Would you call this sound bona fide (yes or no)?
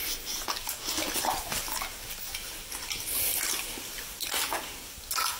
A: yes